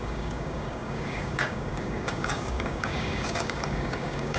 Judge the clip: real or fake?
fake